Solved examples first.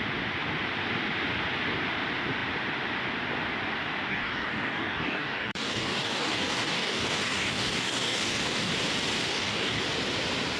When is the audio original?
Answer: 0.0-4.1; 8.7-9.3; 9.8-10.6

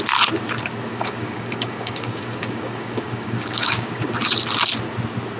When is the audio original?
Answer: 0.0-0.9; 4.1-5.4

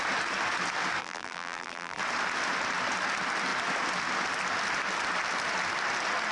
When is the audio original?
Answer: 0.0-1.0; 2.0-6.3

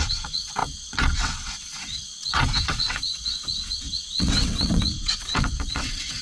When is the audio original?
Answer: none